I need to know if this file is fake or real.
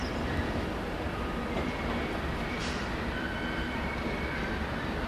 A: real